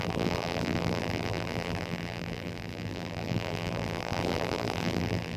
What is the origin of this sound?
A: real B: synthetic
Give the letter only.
B